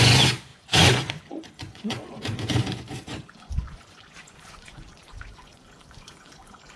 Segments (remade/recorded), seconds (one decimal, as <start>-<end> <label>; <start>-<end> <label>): 0.0-6.8 remade